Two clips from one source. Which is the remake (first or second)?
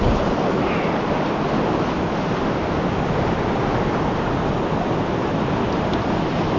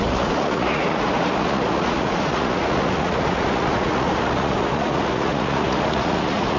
second